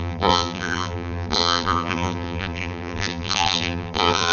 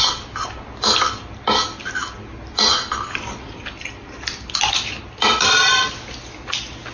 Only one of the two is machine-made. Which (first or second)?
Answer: first